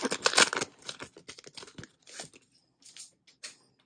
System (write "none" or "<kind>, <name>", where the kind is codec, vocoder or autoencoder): none